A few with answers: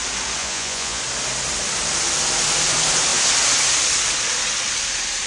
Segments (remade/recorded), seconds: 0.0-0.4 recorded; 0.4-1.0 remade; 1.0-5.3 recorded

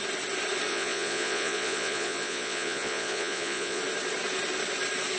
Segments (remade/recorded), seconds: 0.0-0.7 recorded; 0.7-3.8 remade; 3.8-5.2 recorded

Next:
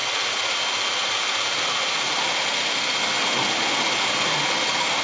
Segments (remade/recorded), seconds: 0.0-5.0 recorded

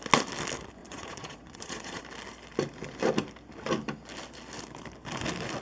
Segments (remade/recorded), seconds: 0.0-0.8 recorded; 0.8-2.0 remade; 2.0-5.6 recorded